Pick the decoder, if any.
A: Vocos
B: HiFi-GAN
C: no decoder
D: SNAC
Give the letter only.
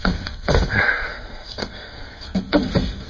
D